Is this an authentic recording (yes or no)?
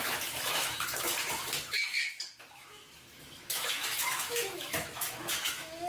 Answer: no